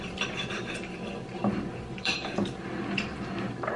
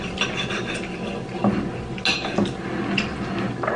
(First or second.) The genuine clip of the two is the second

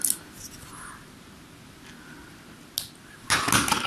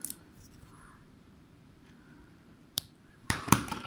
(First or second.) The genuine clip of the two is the first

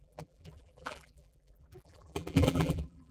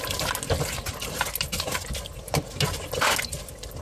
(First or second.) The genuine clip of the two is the second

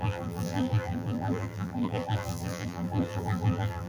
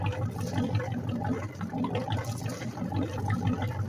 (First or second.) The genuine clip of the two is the second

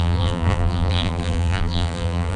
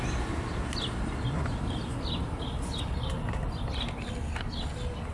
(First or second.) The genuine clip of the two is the second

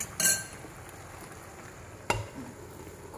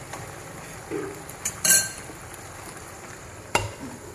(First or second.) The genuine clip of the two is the first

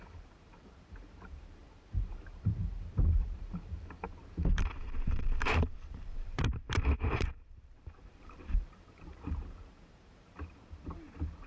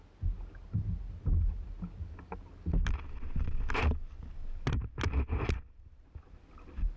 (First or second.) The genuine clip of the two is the second